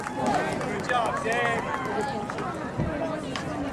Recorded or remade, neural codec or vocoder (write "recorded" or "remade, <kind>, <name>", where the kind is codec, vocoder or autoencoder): recorded